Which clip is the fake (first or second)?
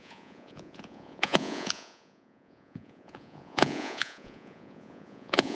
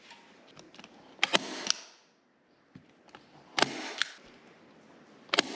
first